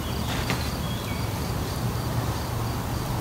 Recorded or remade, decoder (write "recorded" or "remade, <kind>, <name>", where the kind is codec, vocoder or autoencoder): recorded